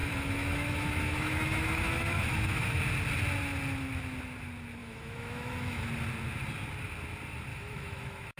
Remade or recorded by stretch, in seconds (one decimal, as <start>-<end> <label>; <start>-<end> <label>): 0.0-2.8 remade; 2.8-4.8 recorded; 4.8-5.9 remade; 5.9-7.5 recorded; 7.5-8.4 remade